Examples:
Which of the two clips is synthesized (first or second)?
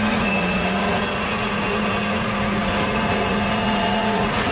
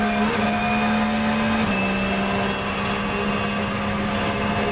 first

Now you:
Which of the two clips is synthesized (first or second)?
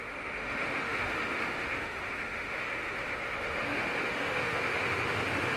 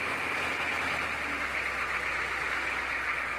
first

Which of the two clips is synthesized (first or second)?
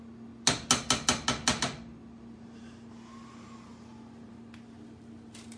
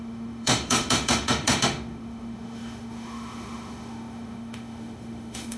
second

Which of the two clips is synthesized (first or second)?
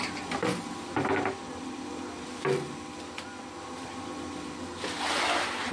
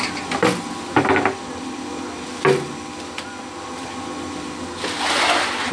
first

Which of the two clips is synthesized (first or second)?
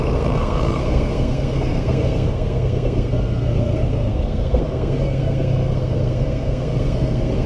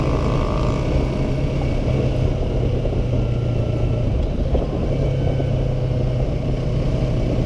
first